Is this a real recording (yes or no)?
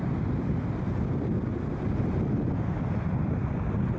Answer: yes